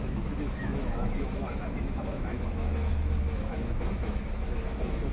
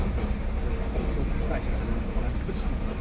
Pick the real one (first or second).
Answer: second